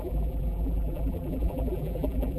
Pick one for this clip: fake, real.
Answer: fake